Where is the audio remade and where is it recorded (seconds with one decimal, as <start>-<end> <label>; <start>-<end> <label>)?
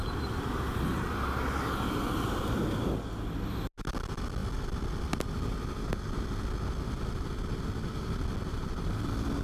0.0-0.6 remade; 0.6-8.5 recorded; 8.5-9.0 remade; 9.0-9.4 recorded